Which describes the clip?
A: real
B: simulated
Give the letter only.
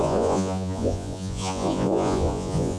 B